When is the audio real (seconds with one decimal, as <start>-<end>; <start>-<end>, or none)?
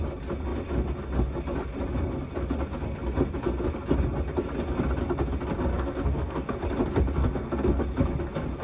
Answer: 0.0-5.7; 6.6-7.2; 7.8-8.6